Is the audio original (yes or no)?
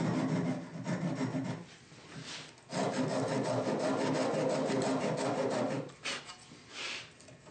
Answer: yes